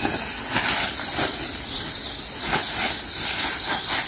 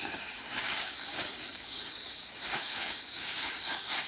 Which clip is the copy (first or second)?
second